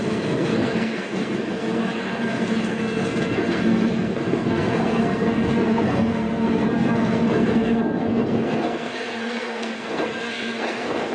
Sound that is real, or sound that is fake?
fake